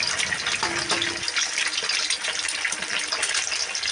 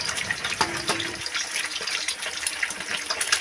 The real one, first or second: first